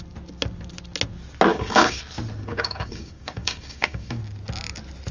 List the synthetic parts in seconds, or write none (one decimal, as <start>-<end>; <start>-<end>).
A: 1.5-2.0; 2.4-4.2